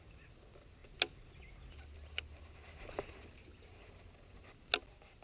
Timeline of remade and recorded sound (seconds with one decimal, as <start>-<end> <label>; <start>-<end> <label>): 0.0-5.2 recorded